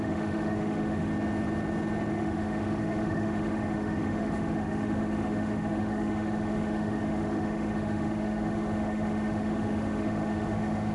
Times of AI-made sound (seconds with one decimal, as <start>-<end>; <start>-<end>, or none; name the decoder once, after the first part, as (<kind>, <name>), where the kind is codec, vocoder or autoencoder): 0.0-1.1 (autoencoder, DAC-VAE); 2.1-10.9